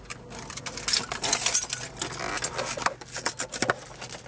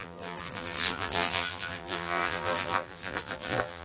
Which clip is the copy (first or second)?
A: second